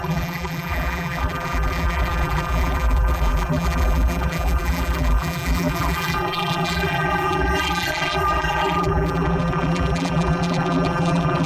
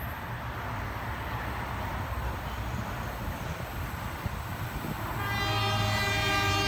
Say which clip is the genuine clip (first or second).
second